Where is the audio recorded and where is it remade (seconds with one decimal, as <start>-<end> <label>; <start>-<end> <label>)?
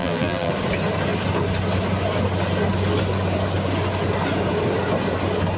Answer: 0.0-0.5 remade; 0.5-5.6 recorded